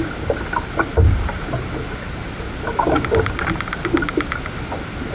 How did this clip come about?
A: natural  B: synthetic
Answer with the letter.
A